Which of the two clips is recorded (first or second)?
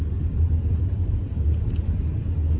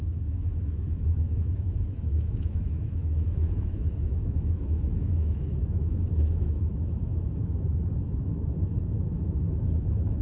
first